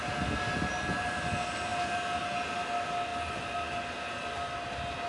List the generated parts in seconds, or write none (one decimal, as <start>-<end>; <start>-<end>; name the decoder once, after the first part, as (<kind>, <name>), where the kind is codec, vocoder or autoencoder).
none